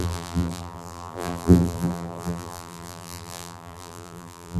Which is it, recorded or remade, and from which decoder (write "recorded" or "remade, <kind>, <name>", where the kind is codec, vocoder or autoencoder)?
remade, vocoder, BigVGAN v2